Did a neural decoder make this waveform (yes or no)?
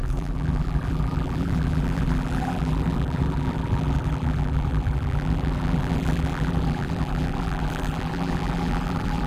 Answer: yes